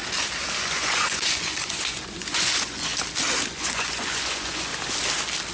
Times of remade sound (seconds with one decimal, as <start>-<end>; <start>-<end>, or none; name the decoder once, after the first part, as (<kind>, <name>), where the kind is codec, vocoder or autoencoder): 0.6-2.9 (vocoder, Vocos); 3.5-4.7